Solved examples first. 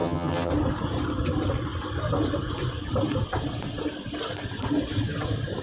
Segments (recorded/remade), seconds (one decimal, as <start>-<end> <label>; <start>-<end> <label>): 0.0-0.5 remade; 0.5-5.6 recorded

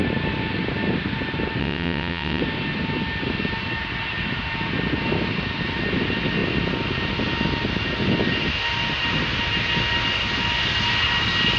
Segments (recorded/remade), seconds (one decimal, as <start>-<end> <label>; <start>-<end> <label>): 0.0-1.6 recorded; 1.6-2.4 remade; 2.4-11.6 recorded

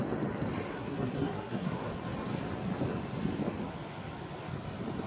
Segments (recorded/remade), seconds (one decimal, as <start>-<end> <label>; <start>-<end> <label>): 0.0-0.7 recorded; 0.7-1.9 remade; 1.9-5.1 recorded